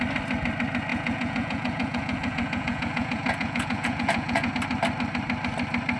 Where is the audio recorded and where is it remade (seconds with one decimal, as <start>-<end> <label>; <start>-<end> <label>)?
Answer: 0.0-0.9 recorded; 0.9-4.5 remade; 4.5-6.0 recorded